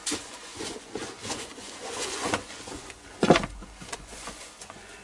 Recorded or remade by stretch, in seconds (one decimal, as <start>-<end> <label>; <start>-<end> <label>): 0.0-5.0 remade